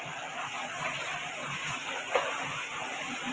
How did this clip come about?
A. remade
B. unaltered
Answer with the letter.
B